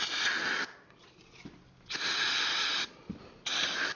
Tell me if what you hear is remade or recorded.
recorded